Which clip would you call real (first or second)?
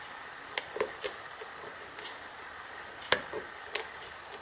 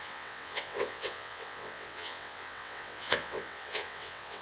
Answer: first